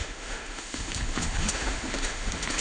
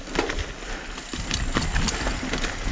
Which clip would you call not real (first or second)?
first